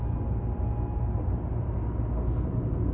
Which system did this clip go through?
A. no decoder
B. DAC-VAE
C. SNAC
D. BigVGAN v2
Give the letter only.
A